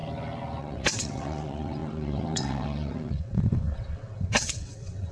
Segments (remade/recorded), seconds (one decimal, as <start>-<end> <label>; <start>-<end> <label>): 0.0-0.6 recorded; 0.6-5.1 remade

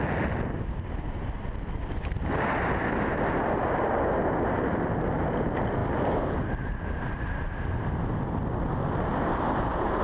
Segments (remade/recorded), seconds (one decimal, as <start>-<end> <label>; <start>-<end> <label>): 0.0-10.0 recorded

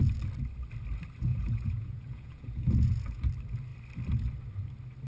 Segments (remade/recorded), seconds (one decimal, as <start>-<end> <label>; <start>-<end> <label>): 0.0-1.3 recorded; 1.3-3.2 remade; 3.2-5.1 recorded

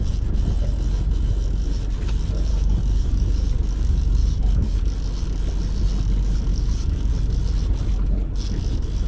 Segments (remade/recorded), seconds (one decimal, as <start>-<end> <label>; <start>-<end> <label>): 0.0-2.5 recorded; 2.5-4.8 remade; 4.8-6.5 recorded; 6.5-7.1 remade; 7.1-9.1 recorded